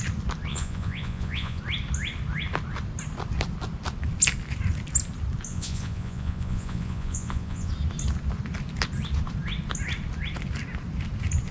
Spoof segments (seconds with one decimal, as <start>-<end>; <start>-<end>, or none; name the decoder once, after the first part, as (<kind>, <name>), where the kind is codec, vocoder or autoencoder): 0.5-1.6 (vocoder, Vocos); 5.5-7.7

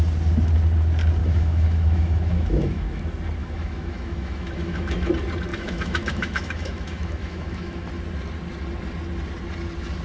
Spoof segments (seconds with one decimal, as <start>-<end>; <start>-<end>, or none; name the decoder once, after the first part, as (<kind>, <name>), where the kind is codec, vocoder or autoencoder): 1.2-3.0 (autoencoder, DAC-VAE); 3.4-5.1; 5.5-7.9

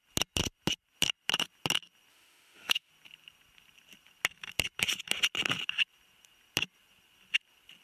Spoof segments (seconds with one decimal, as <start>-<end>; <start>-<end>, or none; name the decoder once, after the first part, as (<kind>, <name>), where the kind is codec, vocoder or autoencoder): 2.1-2.9 (autoencoder, DAC-VAE)

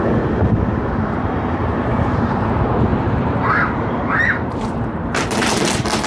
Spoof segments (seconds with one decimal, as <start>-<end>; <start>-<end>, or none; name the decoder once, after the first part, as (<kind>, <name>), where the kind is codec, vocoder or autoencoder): 0.0-6.1 (vocoder, BigVGAN v2)

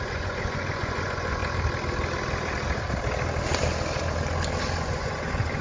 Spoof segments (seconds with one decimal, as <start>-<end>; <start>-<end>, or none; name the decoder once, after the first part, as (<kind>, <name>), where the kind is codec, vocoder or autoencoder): 0.0-1.4 (vocoder, Vocos); 4.8-5.6